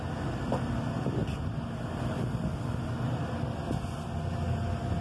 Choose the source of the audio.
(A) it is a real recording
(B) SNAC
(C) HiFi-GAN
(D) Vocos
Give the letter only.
A